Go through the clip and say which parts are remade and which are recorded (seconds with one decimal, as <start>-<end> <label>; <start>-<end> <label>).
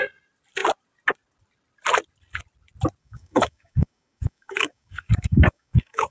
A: 0.0-3.0 recorded; 3.0-6.1 remade